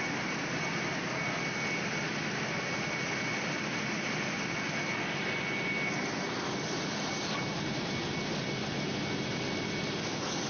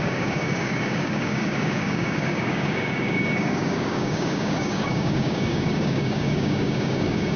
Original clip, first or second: first